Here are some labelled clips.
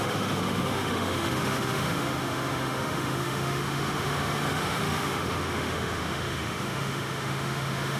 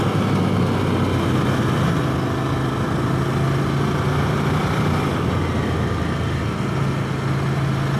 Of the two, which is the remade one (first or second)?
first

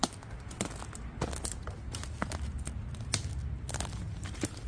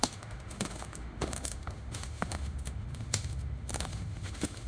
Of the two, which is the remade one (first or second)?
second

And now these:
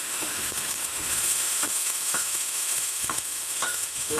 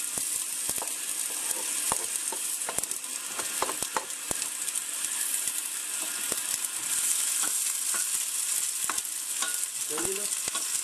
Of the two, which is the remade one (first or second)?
first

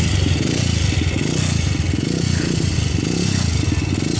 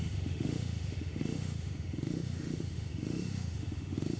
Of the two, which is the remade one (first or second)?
second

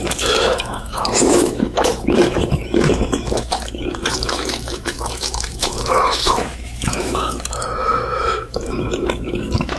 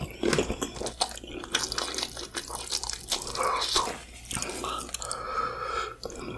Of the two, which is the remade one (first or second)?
first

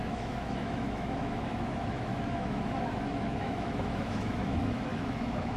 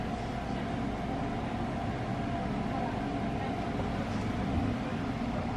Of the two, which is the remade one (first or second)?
first